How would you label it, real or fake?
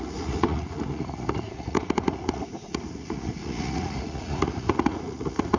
fake